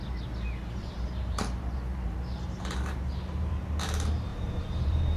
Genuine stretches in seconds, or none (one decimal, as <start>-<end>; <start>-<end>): 0.0-0.6; 3.6-4.3